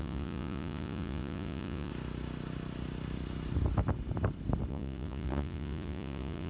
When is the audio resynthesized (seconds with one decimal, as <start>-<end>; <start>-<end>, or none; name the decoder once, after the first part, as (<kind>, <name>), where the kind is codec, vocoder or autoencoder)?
0.0-1.9 (vocoder, Vocos); 4.7-6.5